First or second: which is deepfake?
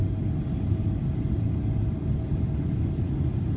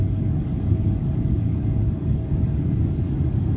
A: second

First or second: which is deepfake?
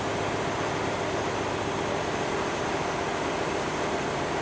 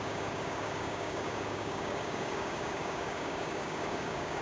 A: second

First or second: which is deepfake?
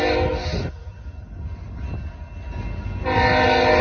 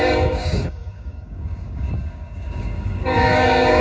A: second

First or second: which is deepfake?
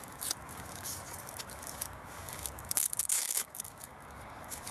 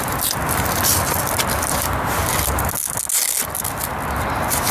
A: first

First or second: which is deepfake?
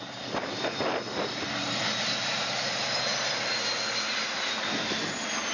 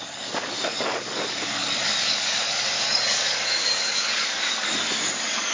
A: second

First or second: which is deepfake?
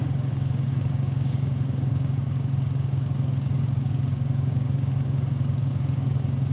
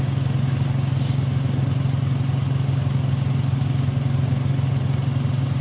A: first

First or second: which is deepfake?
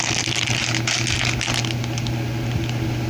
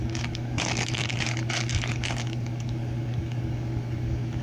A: second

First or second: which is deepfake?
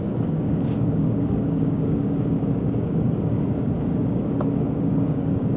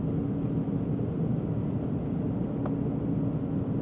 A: first